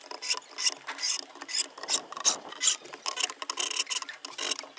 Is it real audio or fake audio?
real